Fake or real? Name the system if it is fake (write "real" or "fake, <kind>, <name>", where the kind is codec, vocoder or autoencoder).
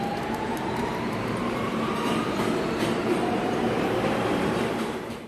fake, vocoder, BigVGAN v2